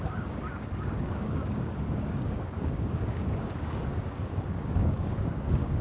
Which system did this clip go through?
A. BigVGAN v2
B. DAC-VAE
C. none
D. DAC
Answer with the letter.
D